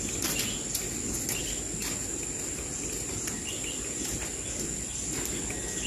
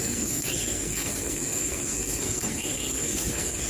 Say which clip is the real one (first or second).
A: first